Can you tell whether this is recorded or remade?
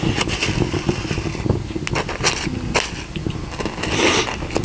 recorded